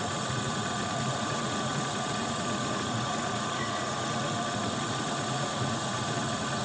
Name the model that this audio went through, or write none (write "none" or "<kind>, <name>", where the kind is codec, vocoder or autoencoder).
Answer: vocoder, Vocos